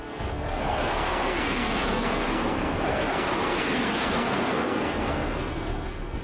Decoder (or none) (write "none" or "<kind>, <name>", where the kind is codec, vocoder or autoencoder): codec, SNAC